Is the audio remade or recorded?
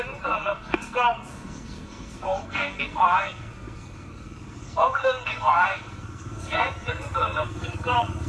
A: remade